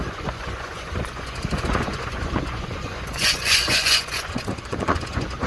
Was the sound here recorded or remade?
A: remade